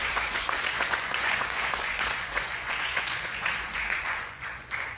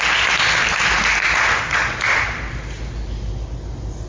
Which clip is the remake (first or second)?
first